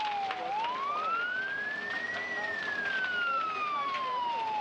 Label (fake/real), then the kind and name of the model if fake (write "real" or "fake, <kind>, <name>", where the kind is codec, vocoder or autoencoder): real